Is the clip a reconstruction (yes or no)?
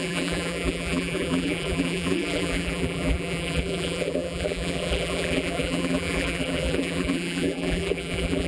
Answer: yes